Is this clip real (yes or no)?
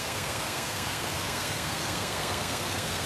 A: no